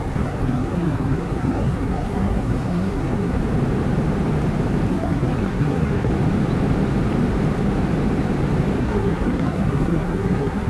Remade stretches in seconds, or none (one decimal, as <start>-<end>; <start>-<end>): 0.0-3.4; 4.9-6.1; 8.8-10.7